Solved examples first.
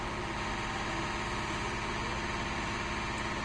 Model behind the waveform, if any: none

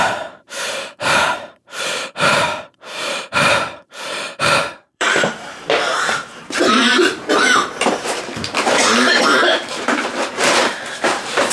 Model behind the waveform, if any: vocoder, BigVGAN v2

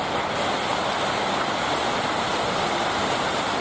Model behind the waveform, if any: none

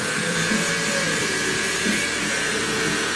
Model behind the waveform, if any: vocoder, Vocos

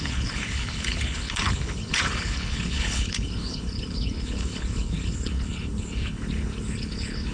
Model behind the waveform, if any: codec, HILCodec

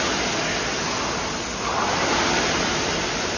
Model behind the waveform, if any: none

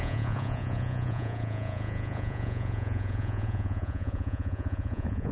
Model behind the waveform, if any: vocoder, Vocos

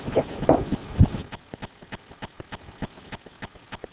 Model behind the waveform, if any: none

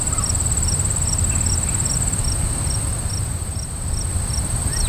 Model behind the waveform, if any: none